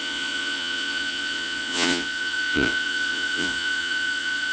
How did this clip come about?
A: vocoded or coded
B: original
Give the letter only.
A